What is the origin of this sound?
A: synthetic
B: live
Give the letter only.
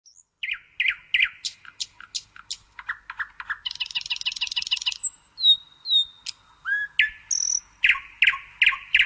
B